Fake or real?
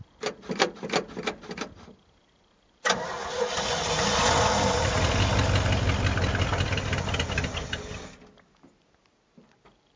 real